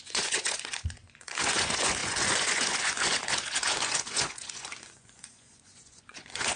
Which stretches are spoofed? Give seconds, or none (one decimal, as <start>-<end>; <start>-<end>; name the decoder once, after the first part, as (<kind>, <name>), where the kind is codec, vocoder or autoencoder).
0.0-6.6 (vocoder, Vocos)